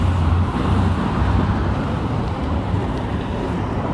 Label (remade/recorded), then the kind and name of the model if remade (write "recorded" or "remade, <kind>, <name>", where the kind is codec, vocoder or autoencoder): remade, vocoder, BigVGAN v2